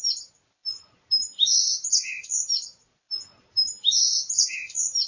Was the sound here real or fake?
real